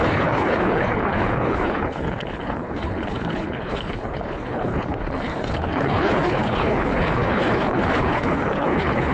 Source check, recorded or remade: remade